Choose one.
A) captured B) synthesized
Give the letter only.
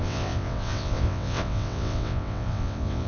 B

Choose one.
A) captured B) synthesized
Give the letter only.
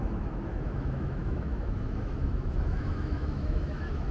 B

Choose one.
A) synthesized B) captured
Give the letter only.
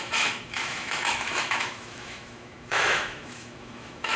A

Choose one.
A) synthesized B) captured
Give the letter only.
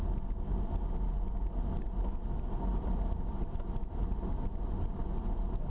B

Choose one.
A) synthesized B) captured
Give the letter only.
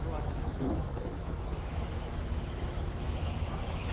A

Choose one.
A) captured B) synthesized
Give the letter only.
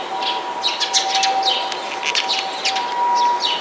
A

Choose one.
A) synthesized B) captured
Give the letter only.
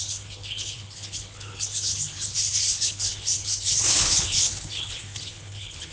A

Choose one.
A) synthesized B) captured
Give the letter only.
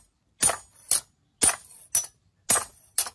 B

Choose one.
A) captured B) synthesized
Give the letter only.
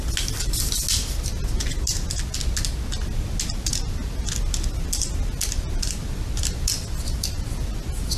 A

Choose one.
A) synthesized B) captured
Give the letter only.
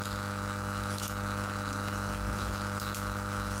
A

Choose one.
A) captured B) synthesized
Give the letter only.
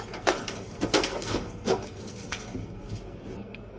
B